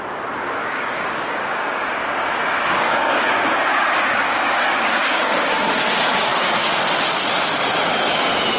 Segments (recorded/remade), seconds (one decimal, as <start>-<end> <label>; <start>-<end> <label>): 0.0-0.6 recorded; 0.6-5.6 remade; 5.6-8.6 recorded